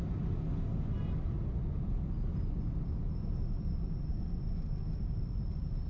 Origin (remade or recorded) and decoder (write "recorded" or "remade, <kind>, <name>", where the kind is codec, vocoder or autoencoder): recorded